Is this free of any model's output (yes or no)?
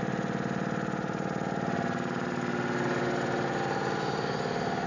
yes